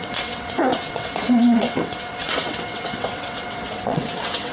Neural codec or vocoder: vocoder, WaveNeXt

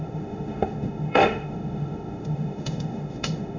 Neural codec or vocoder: autoencoder, DAC-VAE